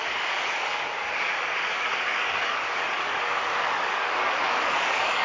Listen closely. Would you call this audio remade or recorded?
remade